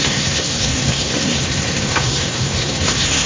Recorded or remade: remade